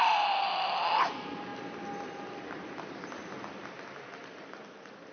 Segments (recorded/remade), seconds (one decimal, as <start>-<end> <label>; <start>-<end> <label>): 0.0-5.1 recorded